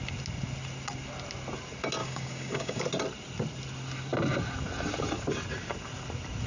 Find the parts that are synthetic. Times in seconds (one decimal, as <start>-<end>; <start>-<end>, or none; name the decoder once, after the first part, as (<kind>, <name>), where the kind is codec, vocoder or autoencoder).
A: 2.0-2.8 (codec, DAC)